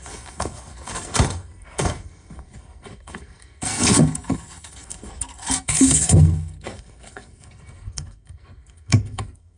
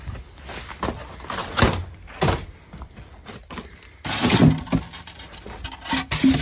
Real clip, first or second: second